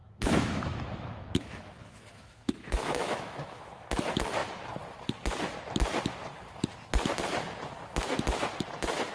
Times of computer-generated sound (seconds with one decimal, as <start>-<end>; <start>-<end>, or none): 0.0-3.9